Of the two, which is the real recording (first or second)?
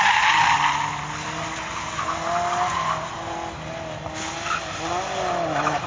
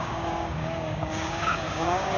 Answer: first